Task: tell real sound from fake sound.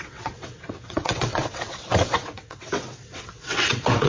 fake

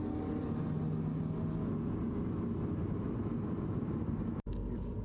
real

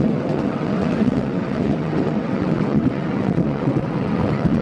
fake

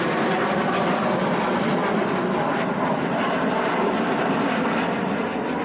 real